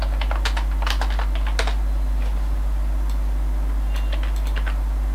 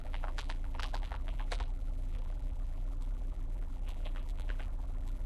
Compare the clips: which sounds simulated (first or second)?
second